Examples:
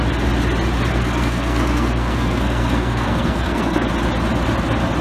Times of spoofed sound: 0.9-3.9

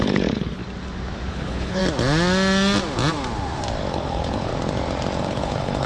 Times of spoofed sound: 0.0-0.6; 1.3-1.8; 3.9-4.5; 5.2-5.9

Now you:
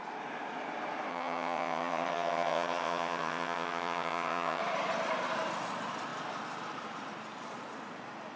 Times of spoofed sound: 1.1-4.6

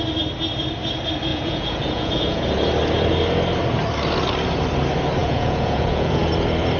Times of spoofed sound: 1.3-2.4; 5.2-6.3